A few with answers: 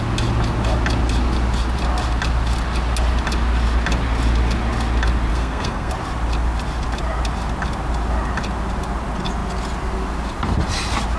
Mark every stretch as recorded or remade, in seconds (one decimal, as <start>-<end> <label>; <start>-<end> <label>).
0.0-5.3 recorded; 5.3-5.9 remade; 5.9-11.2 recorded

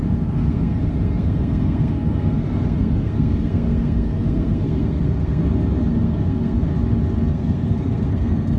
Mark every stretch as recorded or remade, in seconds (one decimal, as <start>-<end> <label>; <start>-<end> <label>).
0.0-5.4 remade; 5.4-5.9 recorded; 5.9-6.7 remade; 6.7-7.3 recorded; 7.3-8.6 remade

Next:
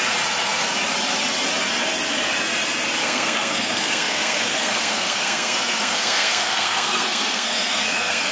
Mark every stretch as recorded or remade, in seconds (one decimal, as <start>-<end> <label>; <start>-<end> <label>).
0.0-3.0 recorded; 3.0-8.3 remade